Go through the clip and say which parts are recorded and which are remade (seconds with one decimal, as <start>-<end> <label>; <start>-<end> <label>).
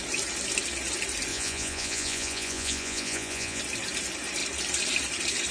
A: 0.0-1.3 recorded; 1.3-3.6 remade; 3.6-5.5 recorded